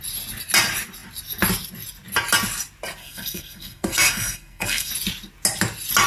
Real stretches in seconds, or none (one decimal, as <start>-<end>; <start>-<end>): 0.0-3.0; 4.9-6.1